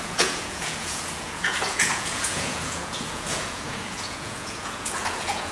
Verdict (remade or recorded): remade